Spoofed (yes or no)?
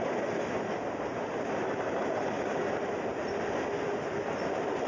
no